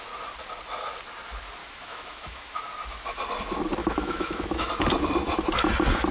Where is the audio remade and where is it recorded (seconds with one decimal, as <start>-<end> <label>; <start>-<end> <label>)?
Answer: 0.0-1.6 recorded; 1.6-2.6 remade; 2.6-3.8 recorded; 3.8-4.7 remade; 4.7-6.1 recorded